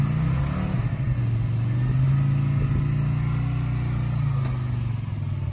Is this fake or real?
real